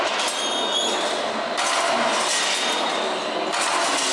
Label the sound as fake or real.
real